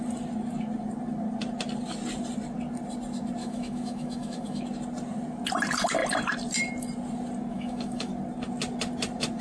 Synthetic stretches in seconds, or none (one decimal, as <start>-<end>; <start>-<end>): 3.4-4.6; 7.5-8.1